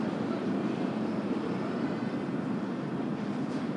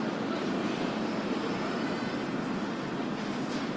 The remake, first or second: first